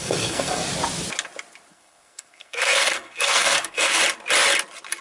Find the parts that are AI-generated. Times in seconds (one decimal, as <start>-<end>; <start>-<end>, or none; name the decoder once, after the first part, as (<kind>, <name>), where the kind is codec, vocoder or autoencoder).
0.0-0.6 (codec, SNAC); 1.7-4.0